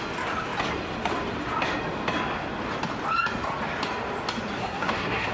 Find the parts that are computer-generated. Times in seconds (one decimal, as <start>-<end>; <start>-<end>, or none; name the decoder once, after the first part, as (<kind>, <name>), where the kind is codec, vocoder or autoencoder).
4.6-5.3 (codec, SNAC)